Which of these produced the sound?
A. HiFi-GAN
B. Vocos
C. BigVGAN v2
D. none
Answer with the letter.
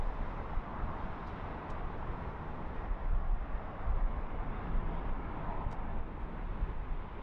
C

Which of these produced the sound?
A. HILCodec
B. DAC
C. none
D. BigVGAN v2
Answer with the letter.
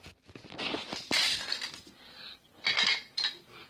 C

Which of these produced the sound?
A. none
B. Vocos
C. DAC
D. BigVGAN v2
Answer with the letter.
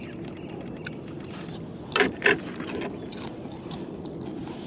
A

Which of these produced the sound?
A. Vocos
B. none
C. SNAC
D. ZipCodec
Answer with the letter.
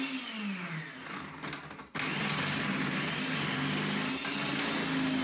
B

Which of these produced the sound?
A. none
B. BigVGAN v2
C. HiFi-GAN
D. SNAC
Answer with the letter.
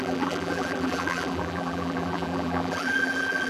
B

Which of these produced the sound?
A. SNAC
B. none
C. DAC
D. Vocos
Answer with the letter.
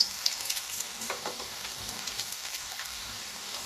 C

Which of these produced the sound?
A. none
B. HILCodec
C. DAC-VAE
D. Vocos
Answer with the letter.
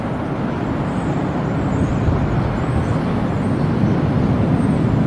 A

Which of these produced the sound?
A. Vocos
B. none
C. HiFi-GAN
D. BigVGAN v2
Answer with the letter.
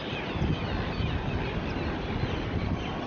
B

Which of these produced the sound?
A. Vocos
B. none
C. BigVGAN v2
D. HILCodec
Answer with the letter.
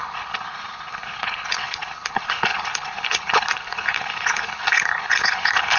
D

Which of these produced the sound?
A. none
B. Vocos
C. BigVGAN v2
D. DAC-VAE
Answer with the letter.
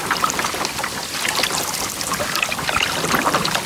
A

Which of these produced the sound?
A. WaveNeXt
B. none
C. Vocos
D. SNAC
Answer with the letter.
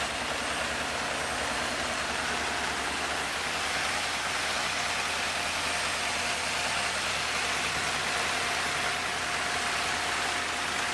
B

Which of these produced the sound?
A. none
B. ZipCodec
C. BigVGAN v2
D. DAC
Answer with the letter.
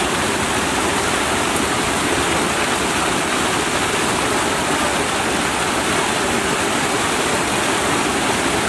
A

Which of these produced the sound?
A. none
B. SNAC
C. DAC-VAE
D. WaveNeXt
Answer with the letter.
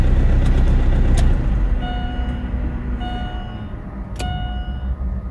A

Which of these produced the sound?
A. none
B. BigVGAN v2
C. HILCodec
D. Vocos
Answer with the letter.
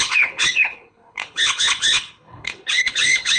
C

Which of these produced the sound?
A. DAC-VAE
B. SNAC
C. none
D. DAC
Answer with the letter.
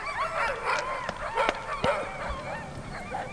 C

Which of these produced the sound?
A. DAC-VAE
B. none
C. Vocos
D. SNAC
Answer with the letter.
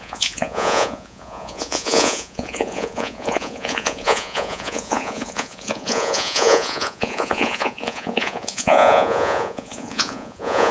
C